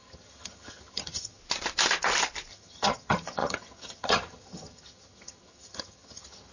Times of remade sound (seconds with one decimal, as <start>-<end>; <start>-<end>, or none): 0.0-1.4; 2.5-6.5